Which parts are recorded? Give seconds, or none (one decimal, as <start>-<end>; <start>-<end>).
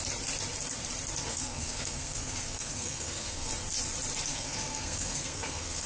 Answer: 0.0-1.3; 3.5-4.3